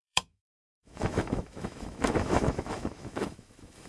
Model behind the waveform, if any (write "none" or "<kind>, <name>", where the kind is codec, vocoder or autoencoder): autoencoder, DAC-VAE